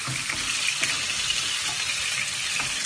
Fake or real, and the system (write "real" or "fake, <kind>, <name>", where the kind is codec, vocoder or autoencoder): real